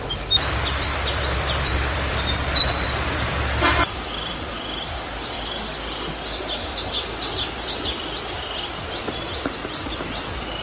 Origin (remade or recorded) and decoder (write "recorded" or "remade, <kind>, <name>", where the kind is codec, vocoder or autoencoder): remade, vocoder, BigVGAN v2